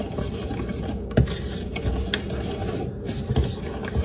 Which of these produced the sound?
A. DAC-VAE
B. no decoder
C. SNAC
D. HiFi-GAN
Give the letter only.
B